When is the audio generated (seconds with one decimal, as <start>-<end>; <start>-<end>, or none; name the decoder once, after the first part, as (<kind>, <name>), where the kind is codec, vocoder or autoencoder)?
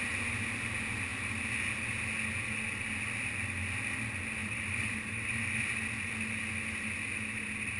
4.4-5.6 (vocoder, BigVGAN v2)